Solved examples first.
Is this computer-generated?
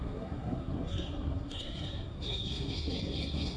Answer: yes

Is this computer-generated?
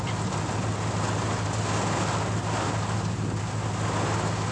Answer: no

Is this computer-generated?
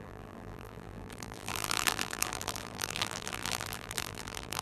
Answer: yes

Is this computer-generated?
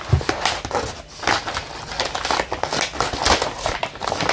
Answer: no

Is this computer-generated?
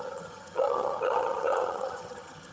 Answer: yes